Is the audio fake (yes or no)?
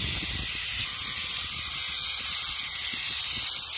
yes